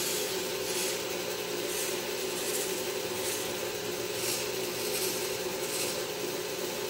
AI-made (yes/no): no